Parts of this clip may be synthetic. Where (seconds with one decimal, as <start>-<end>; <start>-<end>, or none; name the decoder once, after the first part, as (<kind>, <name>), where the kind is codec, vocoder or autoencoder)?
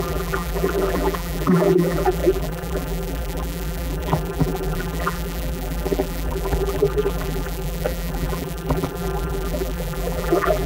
0.0-10.7 (vocoder, BigVGAN v2)